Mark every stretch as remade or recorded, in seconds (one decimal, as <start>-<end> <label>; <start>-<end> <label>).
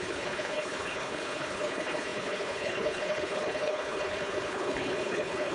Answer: 0.0-5.5 remade